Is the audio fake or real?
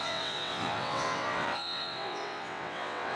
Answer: fake